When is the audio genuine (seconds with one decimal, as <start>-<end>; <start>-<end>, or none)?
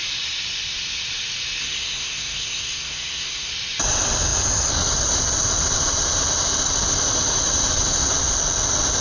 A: 0.0-1.6; 3.5-9.0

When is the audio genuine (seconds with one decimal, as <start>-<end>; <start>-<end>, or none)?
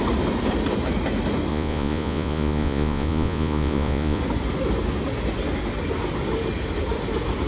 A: 0.0-1.5; 4.2-7.5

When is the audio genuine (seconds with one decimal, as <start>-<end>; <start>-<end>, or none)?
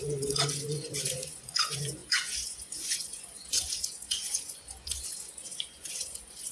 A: none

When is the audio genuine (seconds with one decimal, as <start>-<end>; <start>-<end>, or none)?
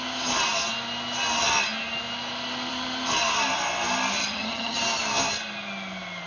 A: 0.0-4.2; 4.8-6.3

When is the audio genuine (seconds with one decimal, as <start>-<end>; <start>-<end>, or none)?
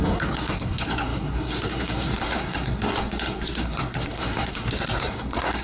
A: none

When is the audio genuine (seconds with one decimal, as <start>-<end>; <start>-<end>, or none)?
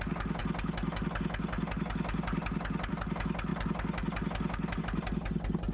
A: 0.0-5.7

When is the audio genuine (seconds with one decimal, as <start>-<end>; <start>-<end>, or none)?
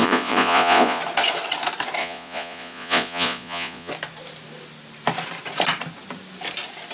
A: 1.0-2.0; 3.9-6.9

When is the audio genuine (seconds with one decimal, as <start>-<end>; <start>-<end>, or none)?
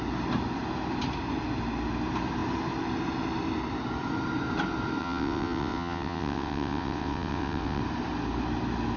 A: 0.0-5.0; 7.8-9.0